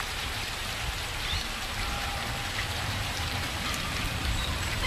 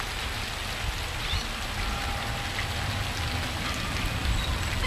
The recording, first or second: second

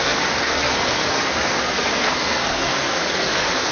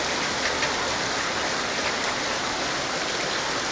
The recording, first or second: second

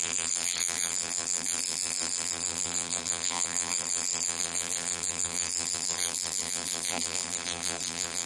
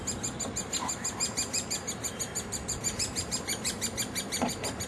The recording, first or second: second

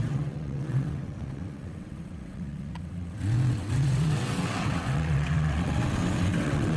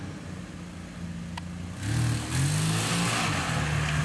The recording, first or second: second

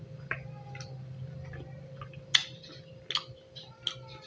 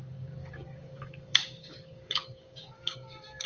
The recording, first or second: first